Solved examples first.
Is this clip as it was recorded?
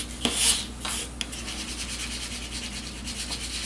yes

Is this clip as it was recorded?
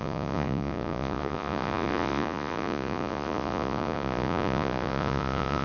no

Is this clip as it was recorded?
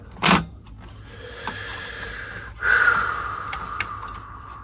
yes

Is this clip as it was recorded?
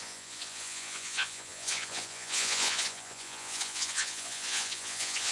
no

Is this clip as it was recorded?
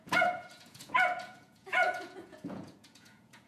no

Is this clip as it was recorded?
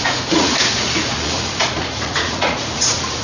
no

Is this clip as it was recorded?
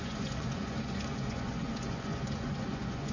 no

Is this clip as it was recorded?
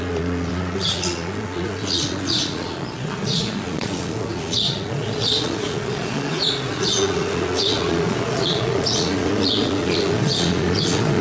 no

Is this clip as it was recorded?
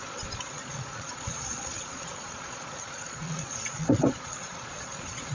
no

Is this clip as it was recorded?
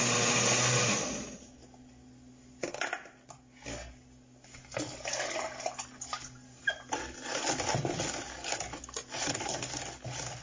yes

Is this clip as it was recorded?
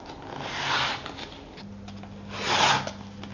yes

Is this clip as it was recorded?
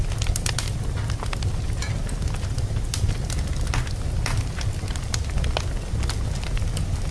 yes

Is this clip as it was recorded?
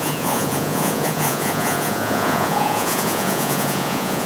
no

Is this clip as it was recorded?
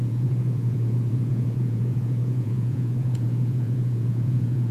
no